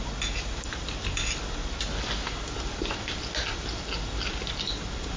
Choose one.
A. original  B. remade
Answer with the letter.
A